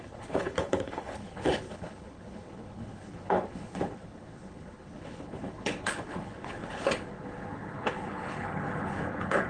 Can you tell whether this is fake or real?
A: fake